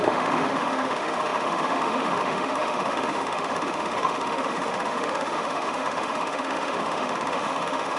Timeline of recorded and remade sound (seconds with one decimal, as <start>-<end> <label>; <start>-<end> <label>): 0.0-8.0 remade